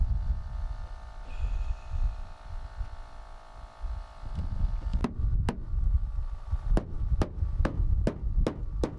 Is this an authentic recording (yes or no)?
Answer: yes